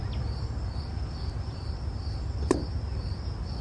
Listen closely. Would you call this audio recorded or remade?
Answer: recorded